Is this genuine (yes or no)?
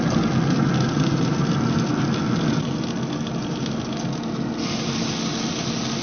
yes